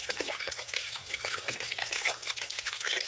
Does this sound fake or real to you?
fake